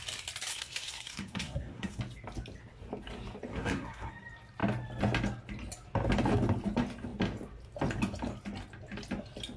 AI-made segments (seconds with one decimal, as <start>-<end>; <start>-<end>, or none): 0.5-2.0; 3.5-4.1